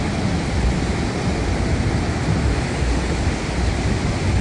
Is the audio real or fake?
real